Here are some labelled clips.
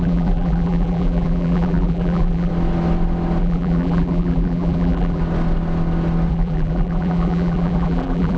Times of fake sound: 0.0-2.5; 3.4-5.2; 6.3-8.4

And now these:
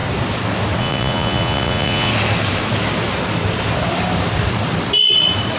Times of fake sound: 0.8-2.1

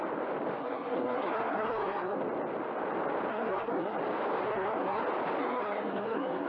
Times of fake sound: 0.6-2.2; 3.3-4.0; 4.4-5.0; 5.4-6.5